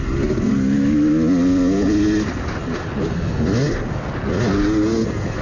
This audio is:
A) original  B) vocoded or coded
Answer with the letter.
A